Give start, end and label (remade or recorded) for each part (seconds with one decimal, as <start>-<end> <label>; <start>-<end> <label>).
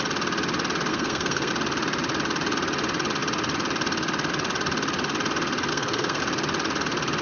0.0-0.9 recorded; 0.9-1.5 remade; 1.5-5.7 recorded; 5.7-6.2 remade; 6.2-7.2 recorded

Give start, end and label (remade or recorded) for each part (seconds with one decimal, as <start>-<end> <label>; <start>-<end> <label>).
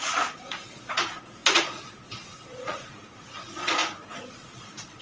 0.0-3.8 remade; 3.8-4.3 recorded; 4.3-5.0 remade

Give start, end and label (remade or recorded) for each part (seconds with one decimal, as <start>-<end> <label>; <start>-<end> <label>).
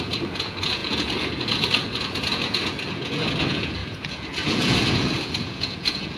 0.0-6.2 remade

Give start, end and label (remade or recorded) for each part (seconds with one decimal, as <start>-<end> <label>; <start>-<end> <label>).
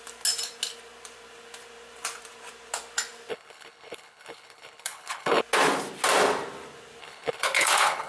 0.0-3.3 recorded; 3.3-5.4 remade; 5.4-7.0 recorded; 7.0-8.1 remade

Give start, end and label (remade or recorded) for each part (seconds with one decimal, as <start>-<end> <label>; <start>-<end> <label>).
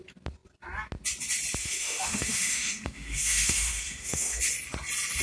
0.0-1.6 recorded; 1.6-4.4 remade; 4.4-5.2 recorded